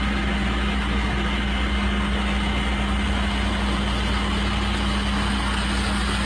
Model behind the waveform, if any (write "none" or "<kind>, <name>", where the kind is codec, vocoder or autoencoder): none